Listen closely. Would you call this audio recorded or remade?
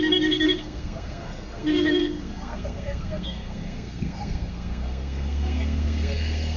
remade